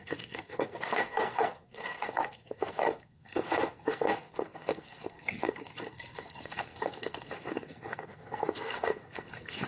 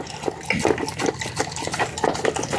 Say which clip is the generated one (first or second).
first